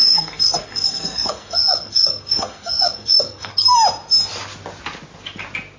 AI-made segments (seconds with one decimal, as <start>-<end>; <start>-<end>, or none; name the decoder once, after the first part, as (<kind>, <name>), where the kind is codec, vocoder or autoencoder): 0.0-3.5 (codec, SNAC)

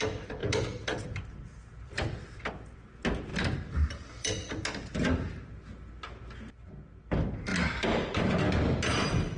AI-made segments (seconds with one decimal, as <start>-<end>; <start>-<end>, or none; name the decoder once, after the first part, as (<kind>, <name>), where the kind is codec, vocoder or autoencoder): 0.4-2.5 (vocoder, BigVGAN v2); 3.3-4.5

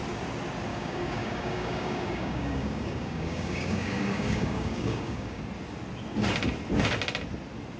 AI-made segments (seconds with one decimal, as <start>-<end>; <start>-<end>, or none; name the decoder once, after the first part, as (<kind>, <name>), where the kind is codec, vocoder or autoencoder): 0.7-5.4 (codec, DAC)

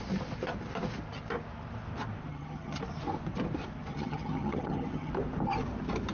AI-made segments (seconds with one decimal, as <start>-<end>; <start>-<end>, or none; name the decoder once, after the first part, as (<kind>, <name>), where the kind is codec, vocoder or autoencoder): 2.3-2.8 (vocoder, HiFi-GAN); 3.9-5.1